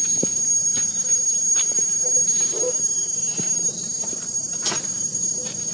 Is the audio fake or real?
real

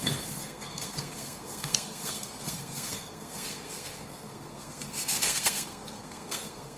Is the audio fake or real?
fake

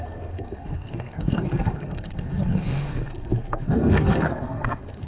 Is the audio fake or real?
fake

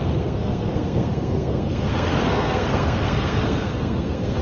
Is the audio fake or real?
fake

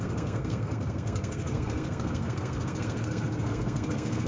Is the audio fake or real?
fake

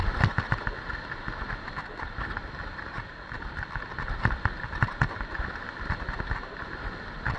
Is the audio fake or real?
real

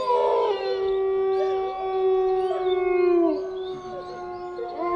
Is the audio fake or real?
real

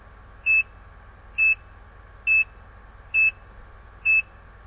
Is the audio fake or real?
real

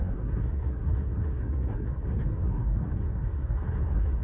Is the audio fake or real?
fake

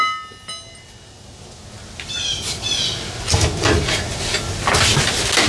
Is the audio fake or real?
real